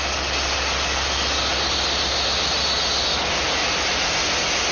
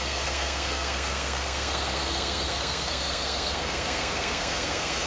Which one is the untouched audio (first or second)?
first